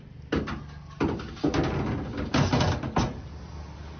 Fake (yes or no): no